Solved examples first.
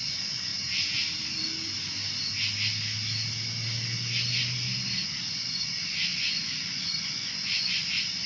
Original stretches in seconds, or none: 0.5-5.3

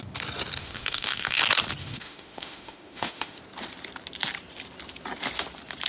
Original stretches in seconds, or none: 0.0-0.6; 1.4-1.8; 3.4-5.9

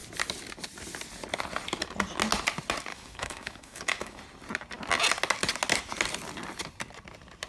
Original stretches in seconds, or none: 0.0-2.9; 4.2-7.5

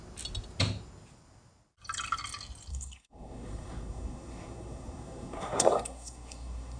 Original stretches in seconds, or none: 0.0-2.7